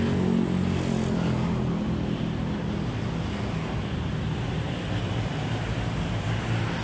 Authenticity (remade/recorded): recorded